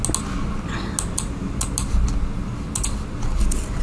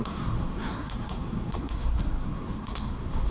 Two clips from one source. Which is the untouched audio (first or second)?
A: first